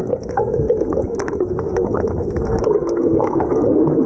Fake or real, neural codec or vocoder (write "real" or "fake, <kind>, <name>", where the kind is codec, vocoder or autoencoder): fake, codec, SNAC